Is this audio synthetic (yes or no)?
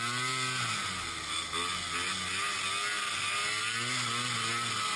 no